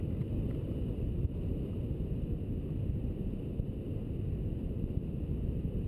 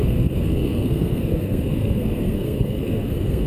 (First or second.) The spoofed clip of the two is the second